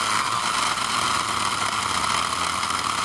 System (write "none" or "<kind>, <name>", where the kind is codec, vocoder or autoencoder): none